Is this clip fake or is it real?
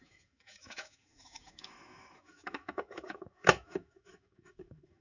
fake